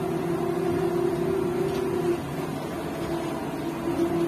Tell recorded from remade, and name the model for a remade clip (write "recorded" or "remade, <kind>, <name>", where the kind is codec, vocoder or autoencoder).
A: recorded